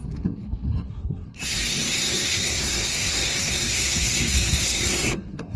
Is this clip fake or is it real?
fake